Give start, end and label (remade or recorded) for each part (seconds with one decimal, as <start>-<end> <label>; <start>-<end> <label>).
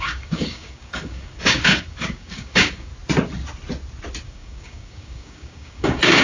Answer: 0.0-2.9 remade; 2.9-4.2 recorded; 4.2-6.2 remade